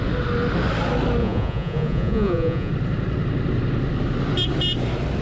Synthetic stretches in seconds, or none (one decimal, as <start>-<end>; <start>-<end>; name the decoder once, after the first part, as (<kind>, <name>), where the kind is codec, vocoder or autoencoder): 1.2-2.7 (vocoder, Vocos)